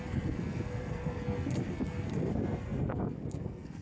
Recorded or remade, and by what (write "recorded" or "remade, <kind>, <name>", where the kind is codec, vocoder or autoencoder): remade, codec, SNAC